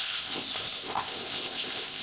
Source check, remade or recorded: remade